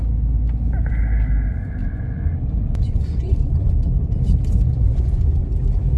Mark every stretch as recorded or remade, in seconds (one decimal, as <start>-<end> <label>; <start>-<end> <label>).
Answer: 0.0-1.8 recorded; 1.8-3.7 remade; 3.7-4.9 recorded; 4.9-5.5 remade; 5.5-6.0 recorded